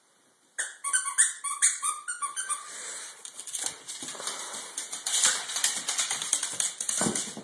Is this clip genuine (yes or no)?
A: yes